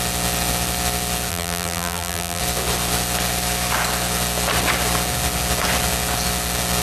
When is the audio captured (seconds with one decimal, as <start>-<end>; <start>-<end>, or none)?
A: 0.0-1.3; 2.4-6.8